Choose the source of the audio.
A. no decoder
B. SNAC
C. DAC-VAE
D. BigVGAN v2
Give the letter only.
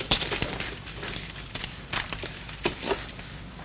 D